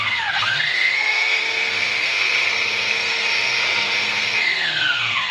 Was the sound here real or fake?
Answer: fake